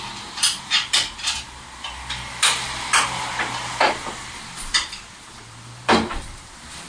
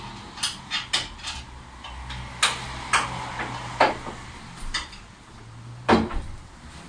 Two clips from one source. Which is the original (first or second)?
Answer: second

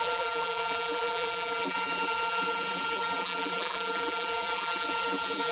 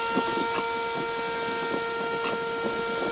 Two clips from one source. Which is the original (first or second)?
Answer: second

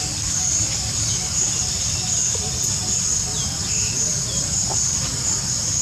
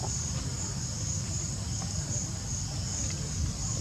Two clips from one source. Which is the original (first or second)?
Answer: first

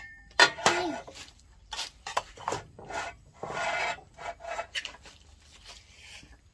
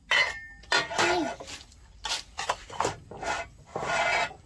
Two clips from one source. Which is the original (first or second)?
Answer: second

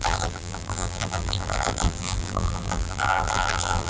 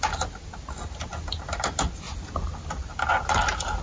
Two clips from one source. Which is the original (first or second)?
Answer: second